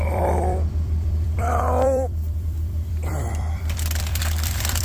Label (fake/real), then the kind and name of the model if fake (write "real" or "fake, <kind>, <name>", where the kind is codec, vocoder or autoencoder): fake, vocoder, BigVGAN v2